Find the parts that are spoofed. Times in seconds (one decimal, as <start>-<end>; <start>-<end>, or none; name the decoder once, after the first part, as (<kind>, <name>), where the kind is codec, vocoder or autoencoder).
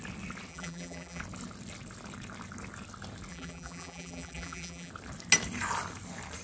0.5-1.2 (vocoder, BigVGAN v2); 3.3-4.9